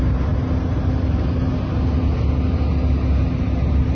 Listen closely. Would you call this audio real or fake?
real